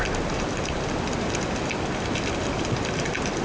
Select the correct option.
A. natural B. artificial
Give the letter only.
A